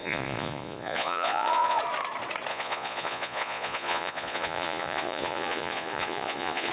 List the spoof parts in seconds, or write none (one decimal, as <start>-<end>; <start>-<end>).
0.0-1.8; 2.5-6.7